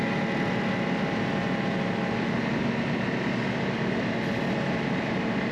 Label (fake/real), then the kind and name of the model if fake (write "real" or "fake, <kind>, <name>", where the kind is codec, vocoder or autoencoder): real